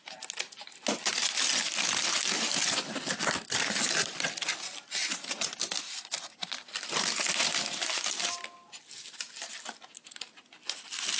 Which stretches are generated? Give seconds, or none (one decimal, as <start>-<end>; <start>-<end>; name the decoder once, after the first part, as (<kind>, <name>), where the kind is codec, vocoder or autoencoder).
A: none